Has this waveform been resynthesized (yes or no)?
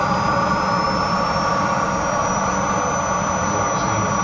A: no